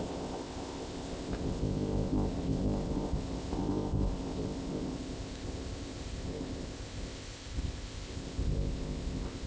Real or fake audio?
fake